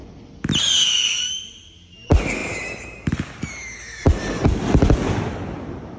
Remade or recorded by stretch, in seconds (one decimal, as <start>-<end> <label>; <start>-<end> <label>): 0.0-6.0 recorded